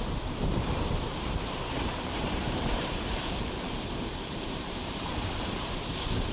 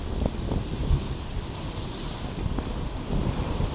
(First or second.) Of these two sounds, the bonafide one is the second